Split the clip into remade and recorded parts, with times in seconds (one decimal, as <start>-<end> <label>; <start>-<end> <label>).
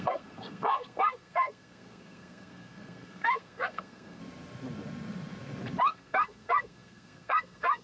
0.0-4.2 remade; 4.2-5.8 recorded; 5.8-7.8 remade